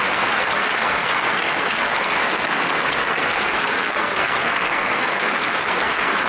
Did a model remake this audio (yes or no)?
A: yes